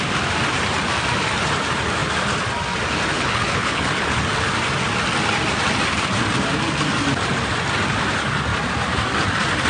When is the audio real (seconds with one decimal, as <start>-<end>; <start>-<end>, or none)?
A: 0.0-3.1; 4.2-9.7